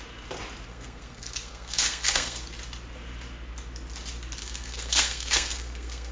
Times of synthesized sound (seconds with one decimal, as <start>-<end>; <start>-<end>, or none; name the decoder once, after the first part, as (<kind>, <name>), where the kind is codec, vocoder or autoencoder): 0.7-2.4 (codec, SNAC); 4.4-6.1